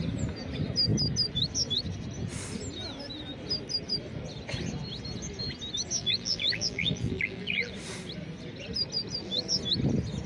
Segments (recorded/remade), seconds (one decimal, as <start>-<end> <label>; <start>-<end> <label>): 0.0-6.0 recorded; 6.0-7.7 remade; 7.7-10.3 recorded